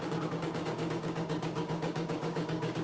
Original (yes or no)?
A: no